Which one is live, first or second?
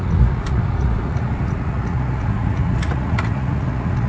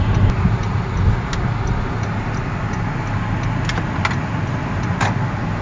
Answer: second